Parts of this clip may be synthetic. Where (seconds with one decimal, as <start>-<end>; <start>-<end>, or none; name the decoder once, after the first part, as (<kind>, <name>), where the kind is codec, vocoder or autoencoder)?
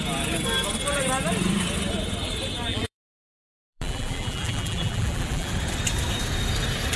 2.7-5.5 (vocoder, BigVGAN v2)